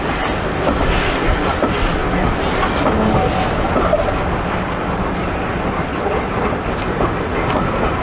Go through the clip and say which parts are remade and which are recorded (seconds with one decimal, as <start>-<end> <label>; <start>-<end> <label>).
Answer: 0.0-8.0 recorded